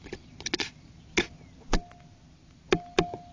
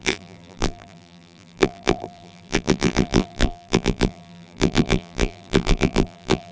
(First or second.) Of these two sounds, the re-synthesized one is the second